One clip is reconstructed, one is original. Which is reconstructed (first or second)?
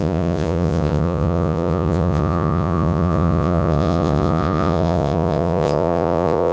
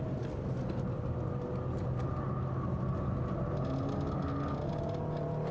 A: first